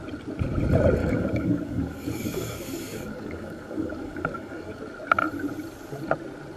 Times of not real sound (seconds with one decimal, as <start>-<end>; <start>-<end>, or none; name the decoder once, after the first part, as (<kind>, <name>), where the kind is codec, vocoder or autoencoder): 1.0-4.8 (codec, DAC)